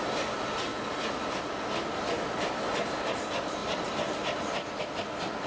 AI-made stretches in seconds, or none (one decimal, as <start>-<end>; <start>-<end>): none